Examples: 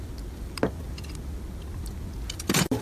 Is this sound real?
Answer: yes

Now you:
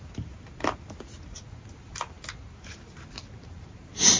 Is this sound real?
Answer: yes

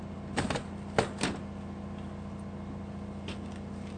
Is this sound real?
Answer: yes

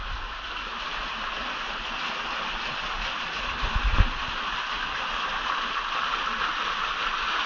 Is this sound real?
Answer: yes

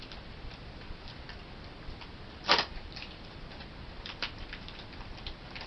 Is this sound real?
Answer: no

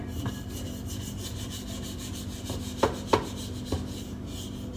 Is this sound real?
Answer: yes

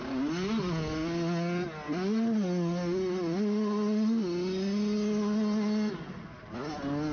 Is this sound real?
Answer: yes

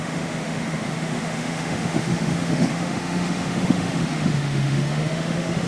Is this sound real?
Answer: no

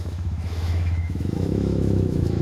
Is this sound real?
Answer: no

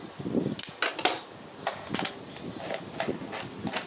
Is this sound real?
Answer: yes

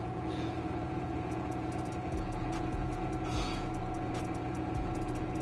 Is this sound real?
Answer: no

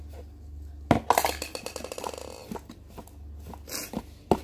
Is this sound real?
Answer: yes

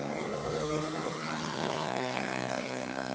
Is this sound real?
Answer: no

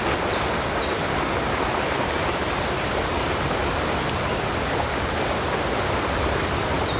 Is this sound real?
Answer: yes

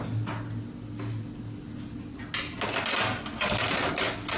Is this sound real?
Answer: yes